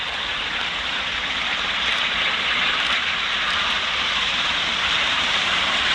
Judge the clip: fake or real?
fake